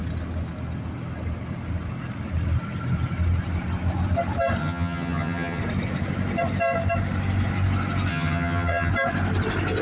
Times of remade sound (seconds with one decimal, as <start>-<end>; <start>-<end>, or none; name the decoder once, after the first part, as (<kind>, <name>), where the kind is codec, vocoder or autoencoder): 4.6-5.6 (vocoder, HiFi-GAN); 8.1-8.9